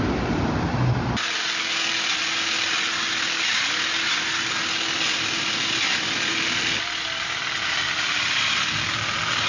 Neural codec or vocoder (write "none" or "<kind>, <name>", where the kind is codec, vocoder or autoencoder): none